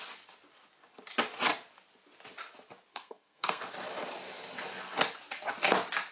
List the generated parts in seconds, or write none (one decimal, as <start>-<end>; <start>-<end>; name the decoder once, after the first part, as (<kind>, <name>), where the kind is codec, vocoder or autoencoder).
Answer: 2.9-3.6 (codec, SNAC)